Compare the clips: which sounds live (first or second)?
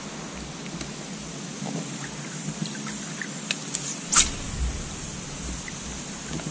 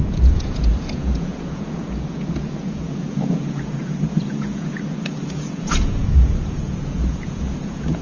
first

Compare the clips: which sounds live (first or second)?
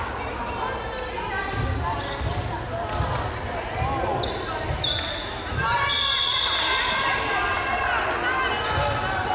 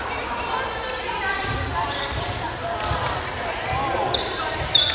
first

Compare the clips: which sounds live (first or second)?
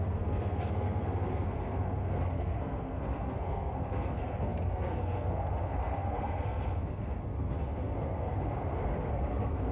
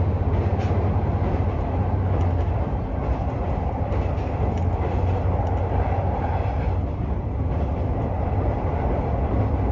second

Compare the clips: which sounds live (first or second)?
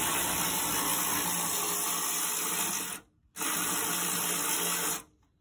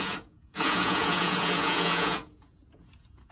first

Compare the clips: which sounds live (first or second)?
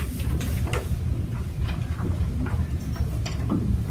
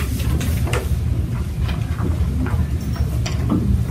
second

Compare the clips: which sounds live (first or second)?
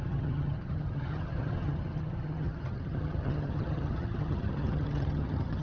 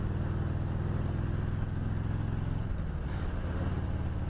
second